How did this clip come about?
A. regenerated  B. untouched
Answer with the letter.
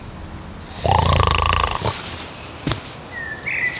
B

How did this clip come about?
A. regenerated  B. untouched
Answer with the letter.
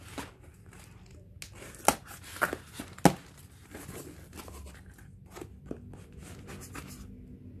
B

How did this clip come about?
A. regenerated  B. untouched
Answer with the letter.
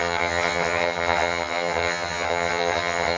A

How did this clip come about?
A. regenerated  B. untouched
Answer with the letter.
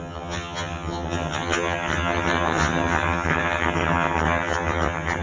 A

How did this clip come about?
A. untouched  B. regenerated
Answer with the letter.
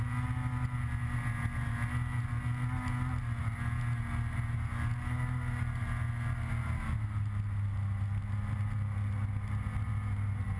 A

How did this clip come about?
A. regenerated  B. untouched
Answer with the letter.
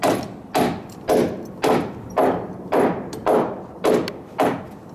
B